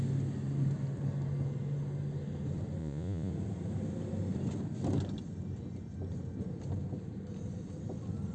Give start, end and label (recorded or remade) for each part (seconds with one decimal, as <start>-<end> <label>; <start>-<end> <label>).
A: 0.0-2.8 recorded; 2.8-3.3 remade; 3.3-8.3 recorded